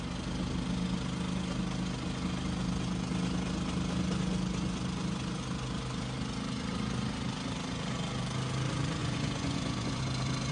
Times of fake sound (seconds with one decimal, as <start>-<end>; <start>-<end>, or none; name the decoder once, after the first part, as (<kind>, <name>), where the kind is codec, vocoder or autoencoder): 9.0-10.0 (vocoder, Vocos)